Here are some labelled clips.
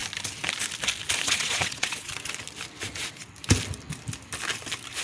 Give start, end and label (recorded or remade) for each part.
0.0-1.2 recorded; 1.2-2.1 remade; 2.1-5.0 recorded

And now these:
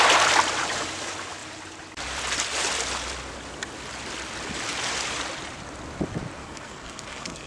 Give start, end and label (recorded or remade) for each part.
0.0-6.4 recorded; 6.4-7.5 remade